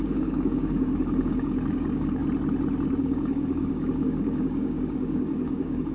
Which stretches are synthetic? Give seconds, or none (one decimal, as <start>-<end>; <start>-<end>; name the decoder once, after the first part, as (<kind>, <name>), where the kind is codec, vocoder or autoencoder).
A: 0.0-2.2 (codec, DAC); 3.0-5.9